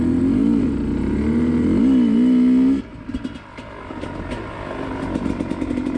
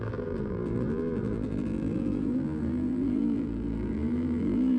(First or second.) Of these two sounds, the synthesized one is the second